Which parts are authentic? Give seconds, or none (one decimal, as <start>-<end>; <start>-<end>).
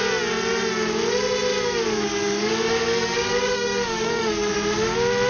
0.0-1.5; 4.5-5.3